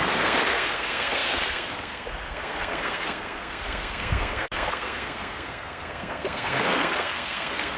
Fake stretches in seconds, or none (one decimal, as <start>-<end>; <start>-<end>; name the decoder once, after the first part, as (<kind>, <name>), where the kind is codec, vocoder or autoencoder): 0.0-7.8 (codec, SNAC)